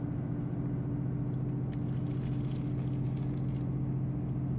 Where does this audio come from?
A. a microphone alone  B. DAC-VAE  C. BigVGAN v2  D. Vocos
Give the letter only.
A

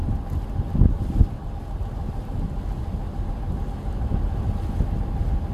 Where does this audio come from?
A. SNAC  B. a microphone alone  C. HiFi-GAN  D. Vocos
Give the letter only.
B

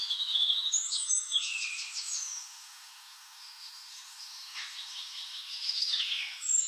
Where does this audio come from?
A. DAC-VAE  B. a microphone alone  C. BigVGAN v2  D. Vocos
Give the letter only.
A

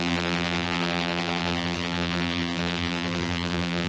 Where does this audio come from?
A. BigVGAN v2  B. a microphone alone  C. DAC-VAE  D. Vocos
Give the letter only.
A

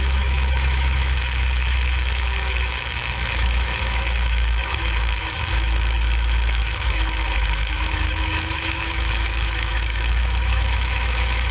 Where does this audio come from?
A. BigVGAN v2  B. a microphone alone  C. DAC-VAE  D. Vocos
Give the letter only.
C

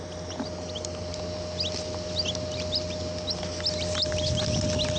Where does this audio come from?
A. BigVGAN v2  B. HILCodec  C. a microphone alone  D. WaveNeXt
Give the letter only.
C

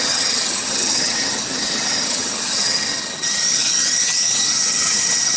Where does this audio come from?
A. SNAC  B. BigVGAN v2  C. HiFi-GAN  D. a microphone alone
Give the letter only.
C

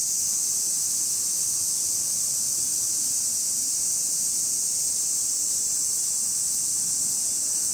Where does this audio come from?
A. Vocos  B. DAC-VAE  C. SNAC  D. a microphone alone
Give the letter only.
D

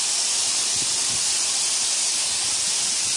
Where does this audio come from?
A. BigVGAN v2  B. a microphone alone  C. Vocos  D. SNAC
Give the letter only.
A